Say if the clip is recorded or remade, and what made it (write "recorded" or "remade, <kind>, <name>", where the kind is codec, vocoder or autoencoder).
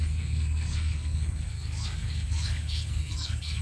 remade, codec, SNAC